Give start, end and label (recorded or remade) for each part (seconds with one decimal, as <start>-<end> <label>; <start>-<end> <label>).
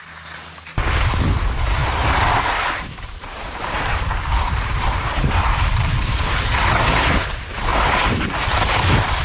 0.0-1.8 recorded; 1.8-6.7 remade; 6.7-7.7 recorded; 7.7-8.3 remade; 8.3-9.2 recorded